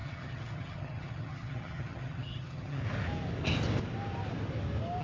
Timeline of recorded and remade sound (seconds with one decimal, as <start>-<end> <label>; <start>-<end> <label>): 0.0-2.8 remade; 2.8-5.0 recorded